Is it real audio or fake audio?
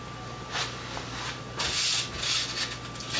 real